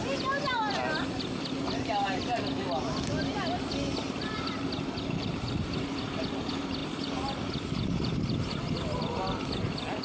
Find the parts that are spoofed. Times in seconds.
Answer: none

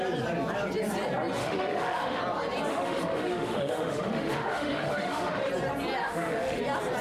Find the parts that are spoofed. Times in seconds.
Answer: 1.4-2.2 (autoencoder, DAC-VAE); 2.7-5.5; 6.0-6.6

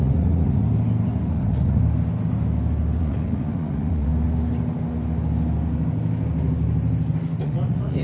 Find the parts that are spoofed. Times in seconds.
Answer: 0.0-0.6 (vocoder, Vocos); 1.3-1.8; 3.0-4.1; 7.4-8.0

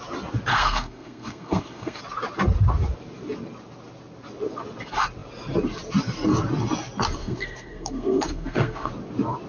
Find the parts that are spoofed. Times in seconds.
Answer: 0.5-2.0 (codec, SNAC); 7.2-8.9

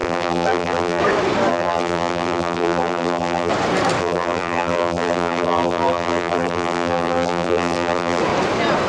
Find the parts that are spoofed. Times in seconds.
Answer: 0.0-1.0 (vocoder, BigVGAN v2); 1.5-3.5; 4.0-8.2

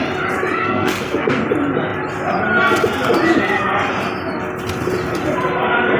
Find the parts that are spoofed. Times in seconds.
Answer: 0.6-1.4 (codec, SNAC)